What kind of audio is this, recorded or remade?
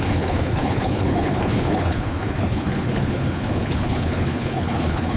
remade